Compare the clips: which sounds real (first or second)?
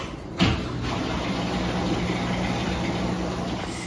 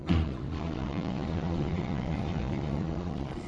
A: first